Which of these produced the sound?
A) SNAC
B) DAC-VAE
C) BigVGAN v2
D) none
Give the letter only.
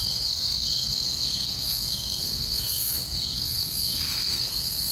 A